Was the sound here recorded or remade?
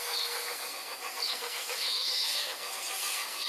remade